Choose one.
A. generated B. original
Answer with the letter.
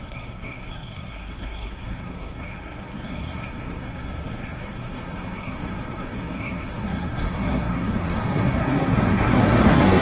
A